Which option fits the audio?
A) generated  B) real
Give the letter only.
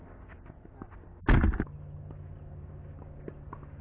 B